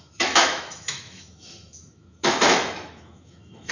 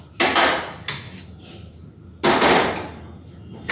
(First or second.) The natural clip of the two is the second